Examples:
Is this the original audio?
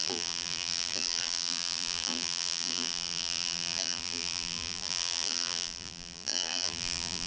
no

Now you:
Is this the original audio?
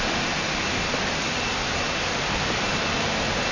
yes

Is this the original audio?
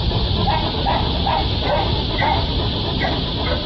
yes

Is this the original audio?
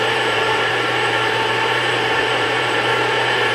no